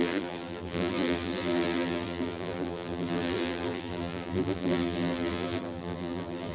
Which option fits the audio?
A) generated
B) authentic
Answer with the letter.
A